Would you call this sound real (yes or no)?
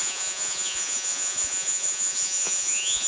no